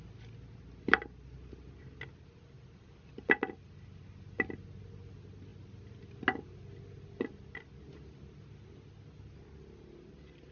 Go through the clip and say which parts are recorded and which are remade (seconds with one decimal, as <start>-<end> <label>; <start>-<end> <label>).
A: 0.0-10.5 recorded